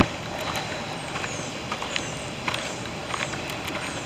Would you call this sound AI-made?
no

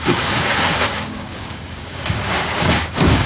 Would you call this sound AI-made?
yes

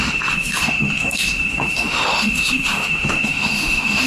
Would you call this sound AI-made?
yes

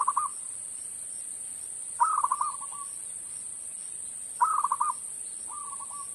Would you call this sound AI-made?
no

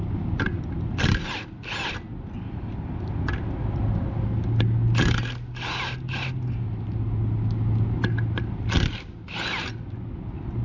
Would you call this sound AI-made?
no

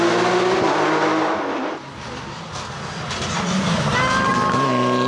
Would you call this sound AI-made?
no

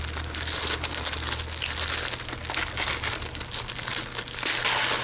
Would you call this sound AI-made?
no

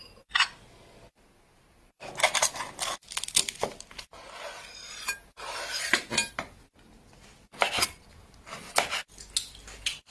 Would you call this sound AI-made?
no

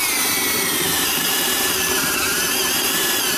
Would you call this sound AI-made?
yes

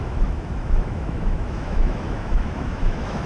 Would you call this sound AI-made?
yes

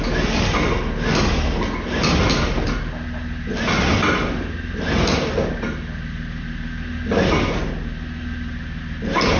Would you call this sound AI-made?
no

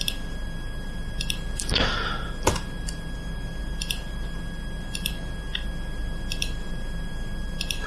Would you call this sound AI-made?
yes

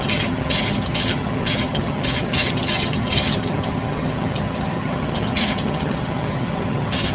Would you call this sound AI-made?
yes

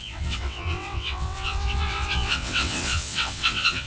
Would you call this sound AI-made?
yes